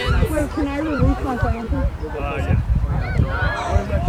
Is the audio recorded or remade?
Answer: remade